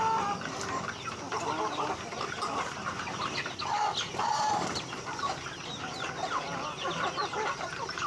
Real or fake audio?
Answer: real